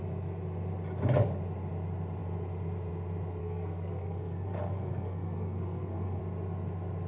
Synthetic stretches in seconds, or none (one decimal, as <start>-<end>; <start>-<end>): 3.4-6.2